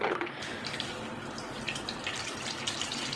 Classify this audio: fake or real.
real